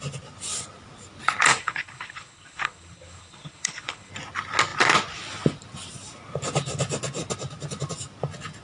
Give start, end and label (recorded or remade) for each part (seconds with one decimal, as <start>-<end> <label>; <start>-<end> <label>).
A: 0.0-1.6 recorded; 1.6-4.1 remade; 4.1-8.6 recorded